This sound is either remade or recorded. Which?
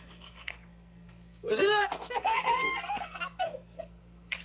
remade